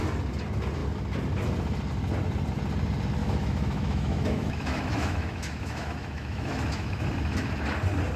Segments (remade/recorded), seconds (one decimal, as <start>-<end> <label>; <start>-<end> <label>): 0.0-3.2 recorded; 3.2-7.1 remade; 7.1-8.2 recorded